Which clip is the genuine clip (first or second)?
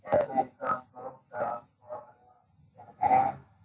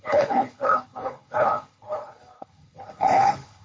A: first